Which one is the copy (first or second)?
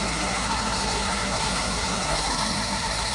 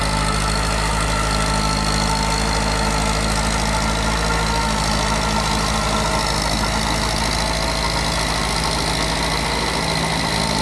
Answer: first